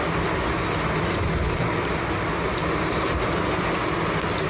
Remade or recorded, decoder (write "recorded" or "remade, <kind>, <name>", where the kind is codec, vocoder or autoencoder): recorded